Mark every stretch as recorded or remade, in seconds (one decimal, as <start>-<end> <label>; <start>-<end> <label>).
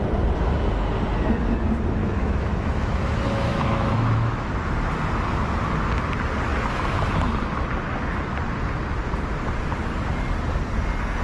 0.0-2.0 recorded; 2.0-3.0 remade; 3.0-3.5 recorded; 3.5-4.5 remade; 4.5-11.2 recorded